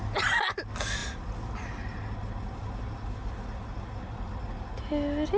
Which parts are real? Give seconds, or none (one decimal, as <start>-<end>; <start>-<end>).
0.0-5.4